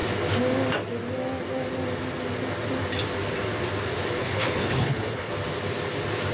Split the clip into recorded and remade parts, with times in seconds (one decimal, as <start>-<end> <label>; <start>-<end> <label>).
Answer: 0.0-4.2 recorded; 4.2-5.3 remade; 5.3-6.3 recorded